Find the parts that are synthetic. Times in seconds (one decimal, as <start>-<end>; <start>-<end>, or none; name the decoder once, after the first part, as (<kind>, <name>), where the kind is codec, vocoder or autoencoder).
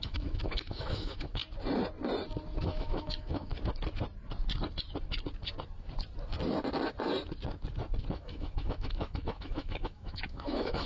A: 0.0-1.4 (autoencoder, DAC-VAE); 2.6-3.5; 8.1-10.9